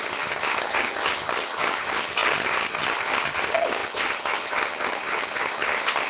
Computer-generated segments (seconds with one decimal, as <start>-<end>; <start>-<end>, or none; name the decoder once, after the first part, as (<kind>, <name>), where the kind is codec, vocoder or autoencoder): 0.0-6.1 (vocoder, HiFi-GAN)